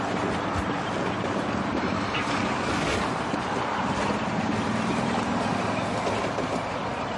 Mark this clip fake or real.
real